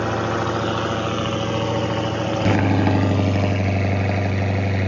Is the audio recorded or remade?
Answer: recorded